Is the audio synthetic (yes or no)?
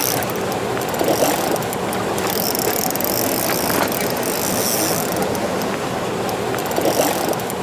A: no